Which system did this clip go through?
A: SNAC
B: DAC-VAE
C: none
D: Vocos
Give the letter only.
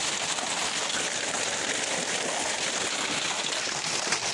C